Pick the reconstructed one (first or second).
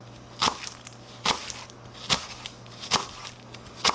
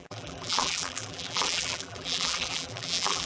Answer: second